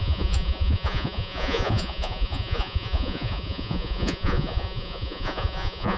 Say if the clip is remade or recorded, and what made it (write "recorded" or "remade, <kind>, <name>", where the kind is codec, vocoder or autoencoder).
remade, vocoder, Vocos